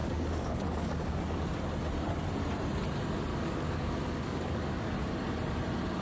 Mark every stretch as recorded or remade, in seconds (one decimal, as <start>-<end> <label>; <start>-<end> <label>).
0.0-1.5 remade; 1.5-3.3 recorded; 3.3-4.9 remade; 4.9-6.0 recorded